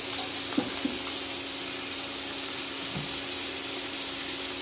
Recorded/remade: recorded